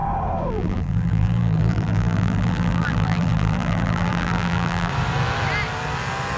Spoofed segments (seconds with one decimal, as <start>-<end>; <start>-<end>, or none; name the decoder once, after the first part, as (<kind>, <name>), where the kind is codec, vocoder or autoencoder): 0.5-4.9 (vocoder, BigVGAN v2)

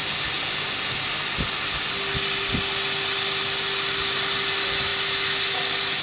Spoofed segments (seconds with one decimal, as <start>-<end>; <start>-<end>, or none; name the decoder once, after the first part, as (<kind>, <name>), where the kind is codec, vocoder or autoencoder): none

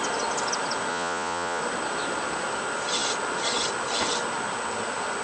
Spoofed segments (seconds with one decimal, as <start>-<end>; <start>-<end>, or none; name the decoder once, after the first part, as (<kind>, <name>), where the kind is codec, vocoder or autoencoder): 0.9-1.6 (vocoder, Vocos)

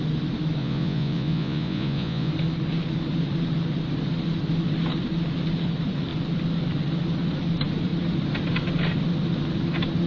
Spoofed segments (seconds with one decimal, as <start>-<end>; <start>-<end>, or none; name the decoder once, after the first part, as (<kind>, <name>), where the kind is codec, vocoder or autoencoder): 0.6-2.3 (vocoder, Vocos)

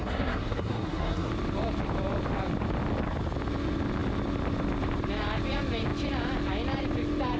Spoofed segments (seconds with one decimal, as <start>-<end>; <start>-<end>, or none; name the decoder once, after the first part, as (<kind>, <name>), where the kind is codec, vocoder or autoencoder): 0.0-1.3 (codec, SNAC)

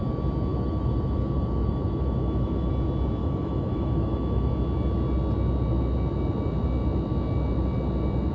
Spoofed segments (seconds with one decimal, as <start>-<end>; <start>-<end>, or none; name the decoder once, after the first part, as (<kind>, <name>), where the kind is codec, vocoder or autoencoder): 0.5-2.7 (autoencoder, DAC-VAE); 3.2-4.5